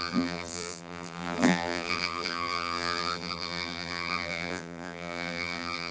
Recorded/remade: remade